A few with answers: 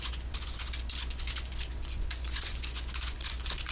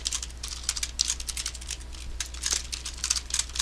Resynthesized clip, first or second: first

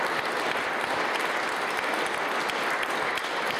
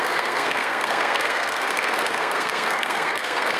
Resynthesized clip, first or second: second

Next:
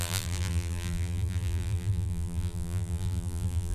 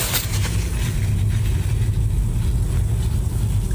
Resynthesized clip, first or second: first